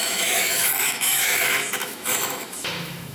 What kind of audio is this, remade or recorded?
remade